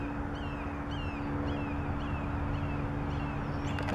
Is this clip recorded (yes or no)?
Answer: yes